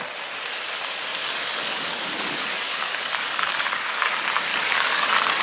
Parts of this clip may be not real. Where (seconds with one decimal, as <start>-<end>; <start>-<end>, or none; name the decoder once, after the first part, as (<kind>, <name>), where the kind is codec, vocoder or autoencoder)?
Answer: 1.2-4.1 (codec, DAC); 4.5-5.4